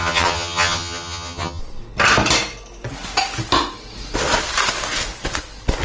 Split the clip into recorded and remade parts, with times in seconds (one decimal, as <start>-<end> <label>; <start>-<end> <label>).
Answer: 0.0-1.6 remade; 1.6-5.8 recorded